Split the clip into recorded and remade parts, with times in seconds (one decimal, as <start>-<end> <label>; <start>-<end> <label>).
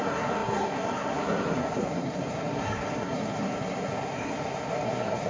0.0-5.3 remade